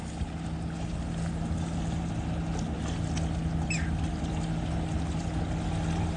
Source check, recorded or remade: recorded